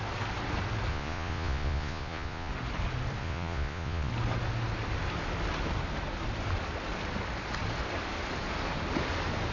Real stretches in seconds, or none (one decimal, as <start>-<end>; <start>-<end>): 0.0-0.9; 2.5-3.2; 4.1-9.5